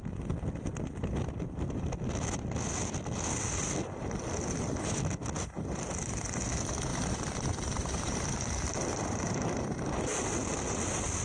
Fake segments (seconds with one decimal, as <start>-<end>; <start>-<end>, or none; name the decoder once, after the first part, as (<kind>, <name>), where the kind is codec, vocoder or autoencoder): 6.9-10.2 (vocoder, BigVGAN v2)